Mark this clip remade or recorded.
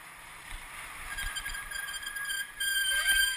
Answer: remade